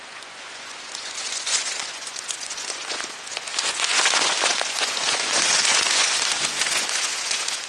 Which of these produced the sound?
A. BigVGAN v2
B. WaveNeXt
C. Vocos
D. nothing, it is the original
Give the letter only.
C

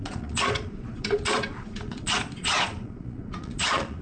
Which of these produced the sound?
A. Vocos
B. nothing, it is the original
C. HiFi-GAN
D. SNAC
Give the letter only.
A